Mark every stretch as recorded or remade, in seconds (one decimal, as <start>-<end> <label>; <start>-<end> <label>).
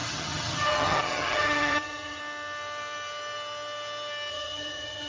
0.0-2.2 remade; 2.2-4.3 recorded; 4.3-5.1 remade